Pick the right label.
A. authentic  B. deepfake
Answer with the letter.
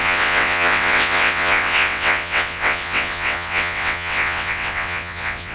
B